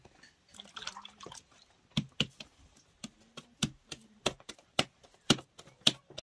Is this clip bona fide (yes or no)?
yes